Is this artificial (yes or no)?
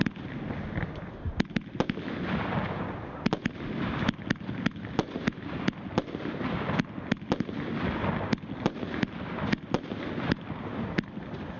no